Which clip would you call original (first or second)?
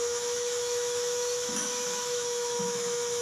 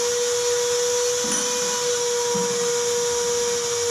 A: second